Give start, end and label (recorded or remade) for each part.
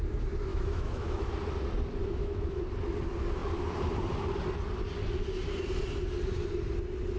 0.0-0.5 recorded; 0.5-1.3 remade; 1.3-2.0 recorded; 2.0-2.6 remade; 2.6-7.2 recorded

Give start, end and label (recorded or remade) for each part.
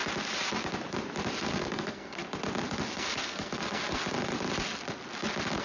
0.0-1.4 recorded; 1.4-2.2 remade; 2.2-2.9 recorded; 2.9-4.0 remade; 4.0-5.6 recorded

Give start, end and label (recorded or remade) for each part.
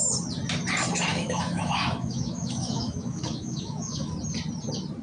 0.0-1.1 recorded; 1.1-4.1 remade; 4.1-5.0 recorded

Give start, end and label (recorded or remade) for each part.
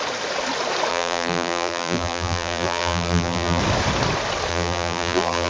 0.0-0.9 recorded; 0.9-3.6 remade; 3.6-4.5 recorded; 4.5-5.5 remade